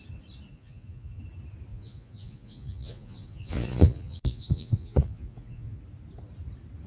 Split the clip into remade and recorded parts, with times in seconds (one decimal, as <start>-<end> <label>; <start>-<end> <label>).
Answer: 0.0-0.5 recorded; 0.5-1.2 remade; 1.2-1.7 recorded; 1.7-5.8 remade; 5.8-6.9 recorded